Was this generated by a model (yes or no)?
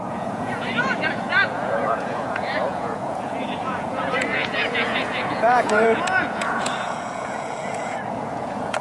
yes